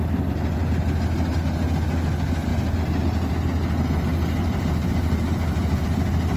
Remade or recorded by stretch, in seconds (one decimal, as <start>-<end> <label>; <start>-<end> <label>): 0.0-4.4 recorded; 4.4-6.4 remade